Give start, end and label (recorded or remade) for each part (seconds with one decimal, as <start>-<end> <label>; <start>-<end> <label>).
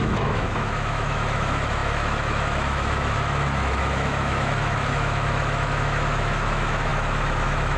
0.0-7.8 remade